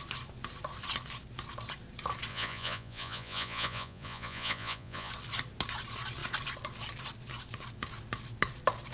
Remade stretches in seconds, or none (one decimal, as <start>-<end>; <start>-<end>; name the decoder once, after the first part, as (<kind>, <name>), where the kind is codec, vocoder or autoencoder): 2.3-5.1 (vocoder, Vocos)